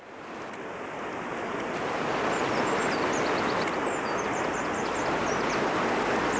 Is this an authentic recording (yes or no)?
yes